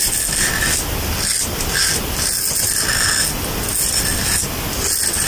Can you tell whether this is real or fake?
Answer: real